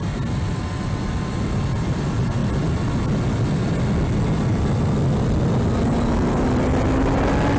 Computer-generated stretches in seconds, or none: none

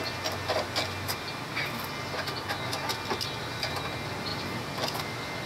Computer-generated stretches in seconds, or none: none

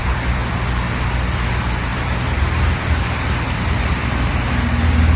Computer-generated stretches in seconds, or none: 0.0-0.5 (vocoder, BigVGAN v2); 1.9-4.5

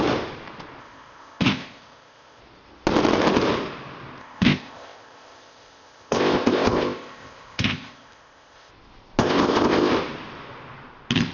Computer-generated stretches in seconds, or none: 0.8-2.4 (codec, ZipCodec); 4.2-8.7; 9.2-9.9

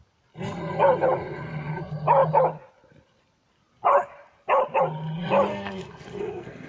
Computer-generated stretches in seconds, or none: 5.5-6.7 (codec, SNAC)

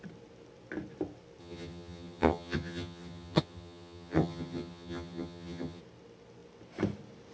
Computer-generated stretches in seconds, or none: 1.4-5.8 (vocoder, HiFi-GAN)